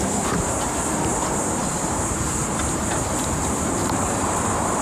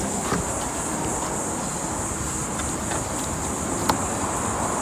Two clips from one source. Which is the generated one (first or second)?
first